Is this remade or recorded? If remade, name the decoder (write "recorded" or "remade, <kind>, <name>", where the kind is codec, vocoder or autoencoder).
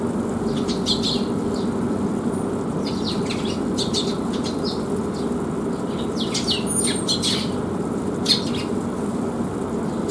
recorded